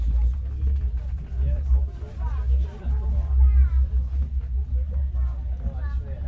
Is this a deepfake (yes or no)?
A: no